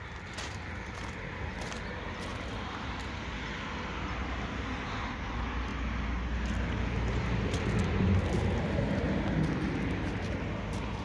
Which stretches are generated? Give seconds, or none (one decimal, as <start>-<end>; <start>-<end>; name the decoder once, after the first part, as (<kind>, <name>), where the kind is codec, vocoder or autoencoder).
none